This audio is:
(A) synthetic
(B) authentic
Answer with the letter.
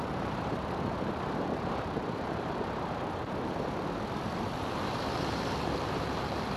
A